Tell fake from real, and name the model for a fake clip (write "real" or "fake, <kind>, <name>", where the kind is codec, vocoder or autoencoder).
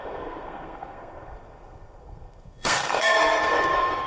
fake, codec, SNAC